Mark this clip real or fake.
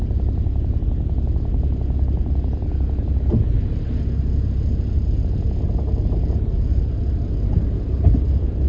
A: real